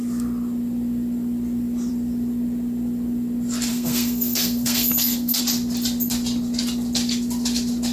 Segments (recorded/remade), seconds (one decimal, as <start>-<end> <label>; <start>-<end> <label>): 0.0-3.7 recorded; 3.7-5.4 remade; 5.4-7.9 recorded